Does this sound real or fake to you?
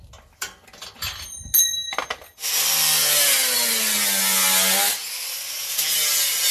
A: real